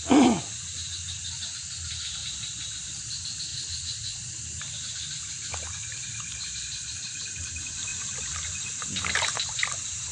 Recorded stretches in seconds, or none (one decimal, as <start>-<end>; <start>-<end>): 0.0-2.2; 3.0-6.1; 7.4-7.9; 9.1-10.1